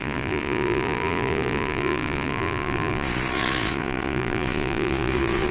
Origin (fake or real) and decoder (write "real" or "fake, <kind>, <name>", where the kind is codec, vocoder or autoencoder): fake, vocoder, Vocos